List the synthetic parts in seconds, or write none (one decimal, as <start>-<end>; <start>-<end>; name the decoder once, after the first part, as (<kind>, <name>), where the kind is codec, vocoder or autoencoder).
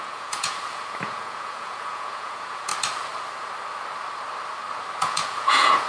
0.0-2.7 (vocoder, Vocos); 5.0-5.9